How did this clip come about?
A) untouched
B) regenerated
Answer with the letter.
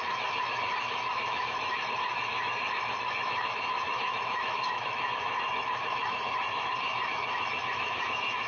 B